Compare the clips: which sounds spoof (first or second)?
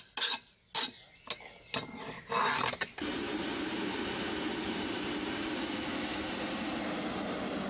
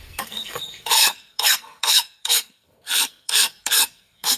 second